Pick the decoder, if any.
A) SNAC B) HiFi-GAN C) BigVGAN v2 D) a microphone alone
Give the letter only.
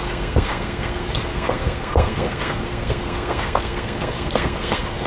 A